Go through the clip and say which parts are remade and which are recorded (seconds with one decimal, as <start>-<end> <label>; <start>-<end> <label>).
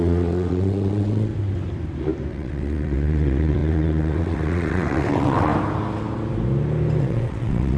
0.0-1.3 remade; 1.3-2.3 recorded; 2.3-5.5 remade; 5.5-7.0 recorded; 7.0-7.8 remade